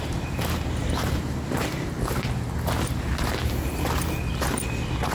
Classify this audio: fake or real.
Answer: fake